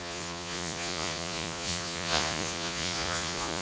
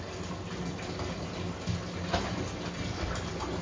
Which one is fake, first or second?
first